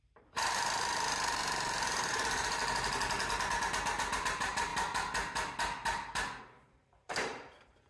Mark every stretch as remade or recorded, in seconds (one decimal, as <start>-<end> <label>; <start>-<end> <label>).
0.0-1.4 remade; 1.4-2.0 recorded; 2.0-2.6 remade; 2.6-4.2 recorded; 4.2-4.7 remade; 4.7-6.4 recorded; 6.4-7.9 remade